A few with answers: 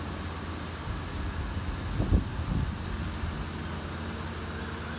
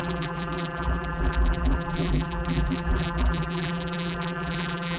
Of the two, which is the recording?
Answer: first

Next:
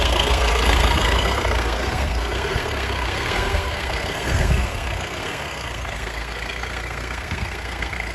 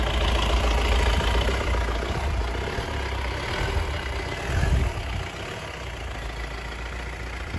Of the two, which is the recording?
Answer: second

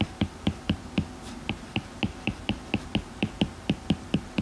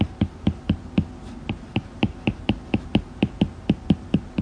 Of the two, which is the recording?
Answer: second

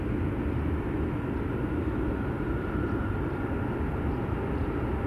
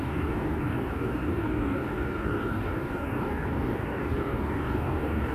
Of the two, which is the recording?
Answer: first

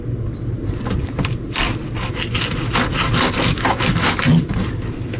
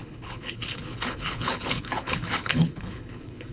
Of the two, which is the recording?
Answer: first